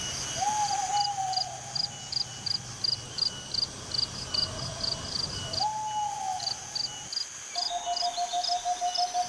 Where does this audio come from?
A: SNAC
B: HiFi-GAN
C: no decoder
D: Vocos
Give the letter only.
C